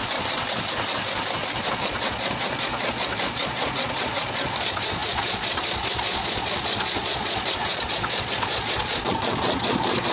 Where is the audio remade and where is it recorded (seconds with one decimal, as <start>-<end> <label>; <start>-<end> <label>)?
0.0-1.6 recorded; 1.6-10.1 remade